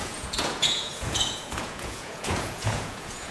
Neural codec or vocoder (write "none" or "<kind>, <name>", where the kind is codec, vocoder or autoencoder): vocoder, Vocos